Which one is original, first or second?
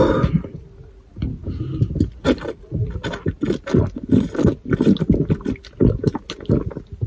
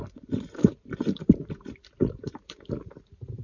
first